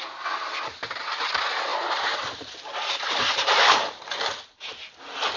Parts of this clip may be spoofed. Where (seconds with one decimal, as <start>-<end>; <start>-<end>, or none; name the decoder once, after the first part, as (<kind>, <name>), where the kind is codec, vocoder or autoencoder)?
1.7-4.0 (vocoder, BigVGAN v2)